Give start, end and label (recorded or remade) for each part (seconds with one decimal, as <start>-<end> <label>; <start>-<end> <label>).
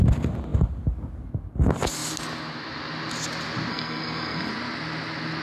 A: 0.0-3.7 recorded; 3.7-4.5 remade; 4.5-5.4 recorded